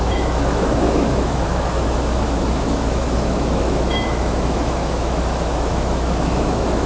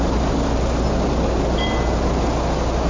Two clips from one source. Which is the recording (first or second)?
second